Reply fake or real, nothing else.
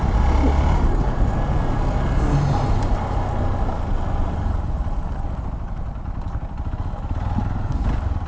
real